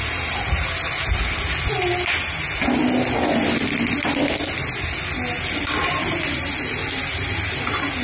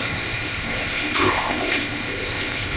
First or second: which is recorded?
first